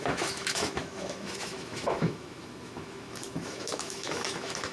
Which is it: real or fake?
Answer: fake